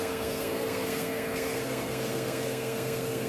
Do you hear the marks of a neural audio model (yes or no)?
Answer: yes